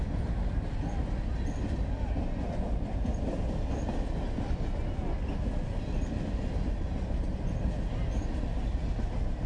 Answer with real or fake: real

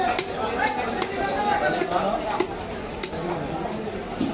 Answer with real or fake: real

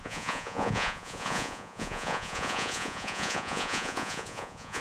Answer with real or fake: fake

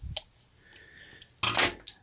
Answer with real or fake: real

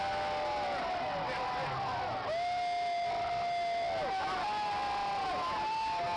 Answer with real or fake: real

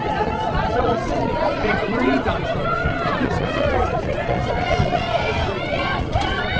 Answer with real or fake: fake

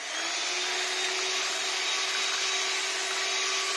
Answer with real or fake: real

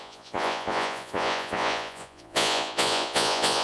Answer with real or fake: fake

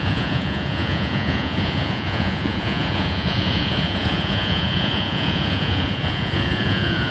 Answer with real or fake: fake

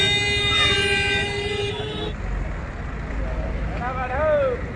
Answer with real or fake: real